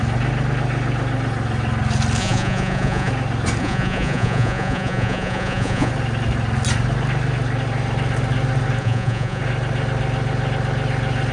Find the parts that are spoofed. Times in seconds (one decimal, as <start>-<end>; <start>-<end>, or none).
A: 2.2-3.1; 3.6-5.9; 8.8-9.4